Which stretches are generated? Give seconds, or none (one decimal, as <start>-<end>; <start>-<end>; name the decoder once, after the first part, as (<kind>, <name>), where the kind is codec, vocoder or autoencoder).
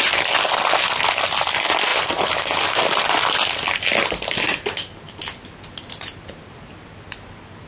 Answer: none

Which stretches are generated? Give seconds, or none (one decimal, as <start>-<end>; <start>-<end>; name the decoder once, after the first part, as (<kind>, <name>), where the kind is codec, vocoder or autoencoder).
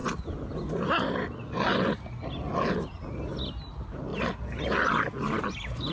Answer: none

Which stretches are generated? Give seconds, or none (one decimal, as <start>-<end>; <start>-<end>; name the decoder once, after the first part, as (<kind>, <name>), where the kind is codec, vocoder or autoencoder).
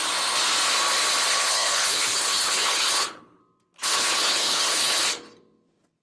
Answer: 1.3-3.4 (codec, HILCodec); 3.8-5.0